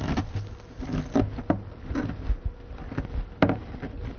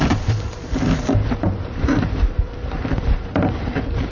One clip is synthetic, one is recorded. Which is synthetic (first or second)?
second